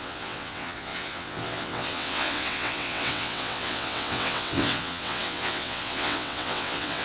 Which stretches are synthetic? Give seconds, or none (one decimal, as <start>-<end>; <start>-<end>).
0.0-7.0